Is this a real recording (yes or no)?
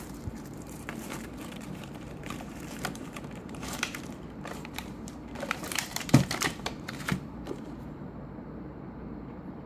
no